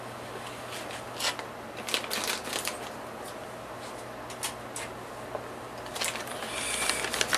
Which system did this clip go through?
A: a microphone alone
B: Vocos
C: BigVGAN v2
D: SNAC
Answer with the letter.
A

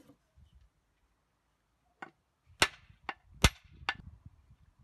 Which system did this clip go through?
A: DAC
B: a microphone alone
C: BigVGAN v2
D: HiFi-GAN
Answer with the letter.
B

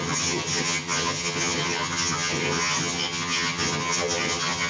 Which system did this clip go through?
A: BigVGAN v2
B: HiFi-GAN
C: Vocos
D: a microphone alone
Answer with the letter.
B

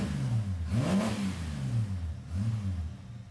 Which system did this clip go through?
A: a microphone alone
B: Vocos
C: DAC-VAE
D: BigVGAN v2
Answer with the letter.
A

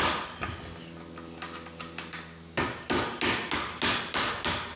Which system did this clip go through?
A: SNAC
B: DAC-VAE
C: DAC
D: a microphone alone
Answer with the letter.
D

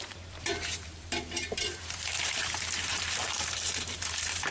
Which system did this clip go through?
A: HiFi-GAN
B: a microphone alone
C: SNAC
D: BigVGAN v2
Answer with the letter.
D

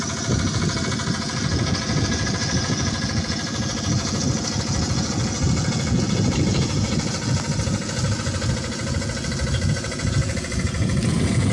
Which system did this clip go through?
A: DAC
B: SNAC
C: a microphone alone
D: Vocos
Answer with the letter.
D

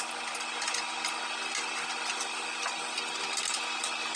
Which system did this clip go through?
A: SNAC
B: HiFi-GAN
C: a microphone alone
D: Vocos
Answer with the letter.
C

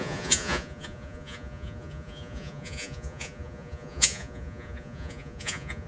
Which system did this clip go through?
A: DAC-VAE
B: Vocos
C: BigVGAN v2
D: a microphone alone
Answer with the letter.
B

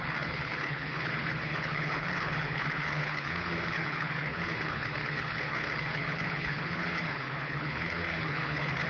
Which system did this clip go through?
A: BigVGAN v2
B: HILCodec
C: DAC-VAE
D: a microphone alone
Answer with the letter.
B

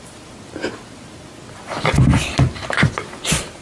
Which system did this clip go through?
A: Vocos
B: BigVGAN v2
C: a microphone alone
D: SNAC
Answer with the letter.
C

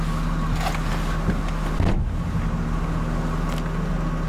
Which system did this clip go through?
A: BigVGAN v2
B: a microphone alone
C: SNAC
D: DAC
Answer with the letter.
B